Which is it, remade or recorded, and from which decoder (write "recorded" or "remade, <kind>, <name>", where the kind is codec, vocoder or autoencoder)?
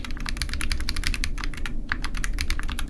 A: recorded